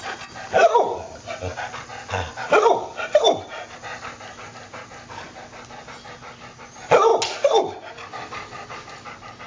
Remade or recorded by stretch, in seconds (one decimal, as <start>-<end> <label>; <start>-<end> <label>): 0.0-9.5 recorded